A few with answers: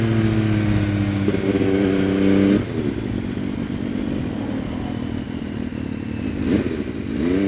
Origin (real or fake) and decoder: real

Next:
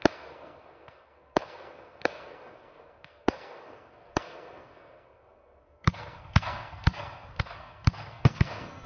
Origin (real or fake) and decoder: fake, codec, SNAC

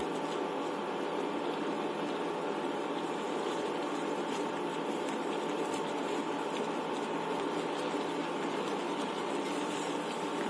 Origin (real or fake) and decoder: real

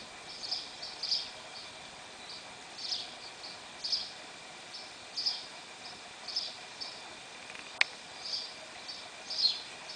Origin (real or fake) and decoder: real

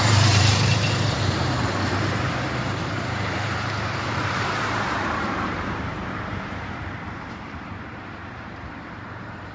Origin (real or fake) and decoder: fake, vocoder, BigVGAN v2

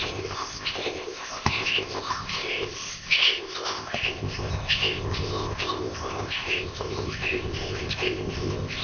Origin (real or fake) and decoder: fake, codec, ZipCodec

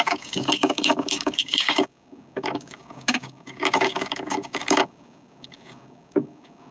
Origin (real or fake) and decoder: fake, codec, DAC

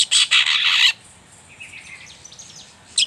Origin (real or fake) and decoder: real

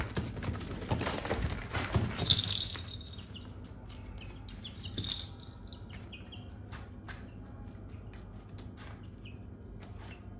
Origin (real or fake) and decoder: real